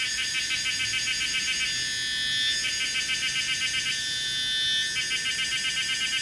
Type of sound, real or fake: real